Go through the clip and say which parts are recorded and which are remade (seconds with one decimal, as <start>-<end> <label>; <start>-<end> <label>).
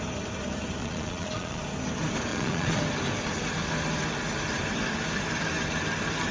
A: 0.0-0.8 recorded; 0.8-1.6 remade; 1.6-2.3 recorded; 2.3-2.8 remade; 2.8-6.3 recorded